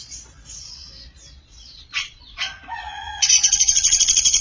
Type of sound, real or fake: fake